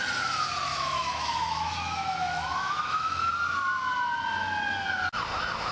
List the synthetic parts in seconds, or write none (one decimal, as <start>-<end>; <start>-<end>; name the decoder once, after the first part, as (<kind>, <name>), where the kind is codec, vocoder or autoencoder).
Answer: 0.7-3.3 (autoencoder, DAC-VAE)